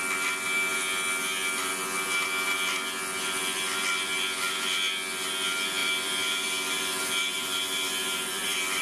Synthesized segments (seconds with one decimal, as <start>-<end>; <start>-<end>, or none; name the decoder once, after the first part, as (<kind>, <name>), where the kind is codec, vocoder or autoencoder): 5.8-8.8 (vocoder, BigVGAN v2)